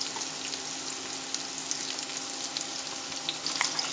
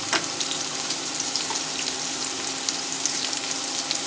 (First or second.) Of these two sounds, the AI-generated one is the second